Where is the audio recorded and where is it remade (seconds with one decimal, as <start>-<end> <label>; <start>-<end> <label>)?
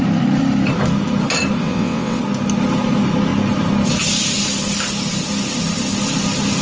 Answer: 0.0-1.6 recorded; 1.6-2.2 remade; 2.2-6.6 recorded